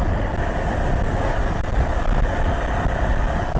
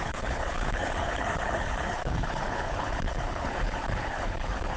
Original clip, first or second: first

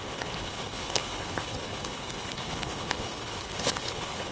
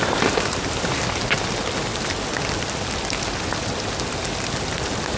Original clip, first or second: second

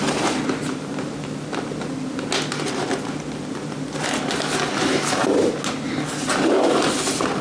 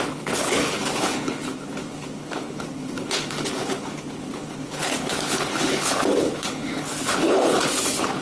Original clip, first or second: first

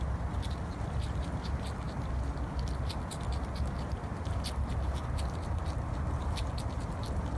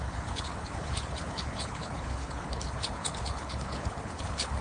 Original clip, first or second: first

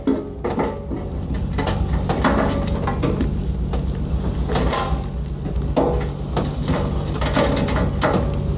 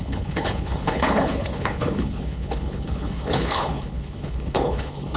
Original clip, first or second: first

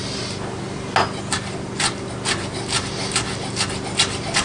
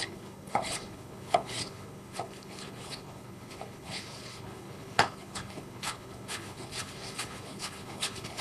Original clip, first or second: first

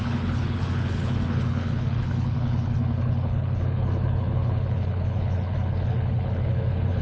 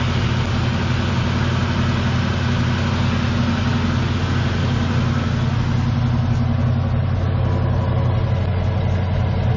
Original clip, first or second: second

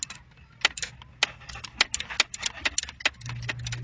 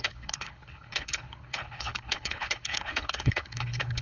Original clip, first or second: first